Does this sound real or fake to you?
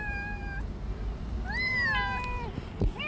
real